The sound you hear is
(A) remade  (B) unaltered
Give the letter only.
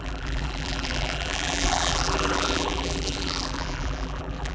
A